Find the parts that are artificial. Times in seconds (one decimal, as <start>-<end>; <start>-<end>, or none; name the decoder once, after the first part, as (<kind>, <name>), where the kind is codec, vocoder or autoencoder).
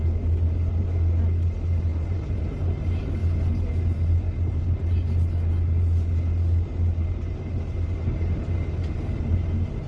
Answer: 1.9-2.5 (vocoder, BigVGAN v2)